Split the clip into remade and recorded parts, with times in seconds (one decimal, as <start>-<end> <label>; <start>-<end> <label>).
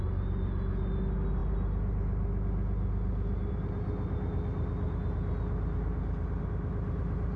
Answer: 0.0-7.4 recorded